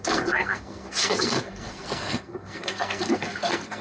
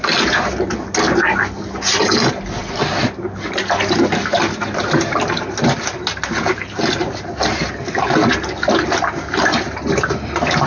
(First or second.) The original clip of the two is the second